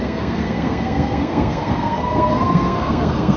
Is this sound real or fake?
fake